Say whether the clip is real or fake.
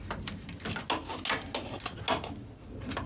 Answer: real